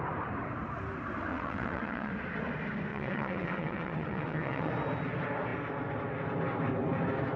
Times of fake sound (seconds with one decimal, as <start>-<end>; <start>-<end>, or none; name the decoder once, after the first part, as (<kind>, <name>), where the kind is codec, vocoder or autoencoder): 1.3-2.1 (vocoder, WaveNeXt); 2.9-4.7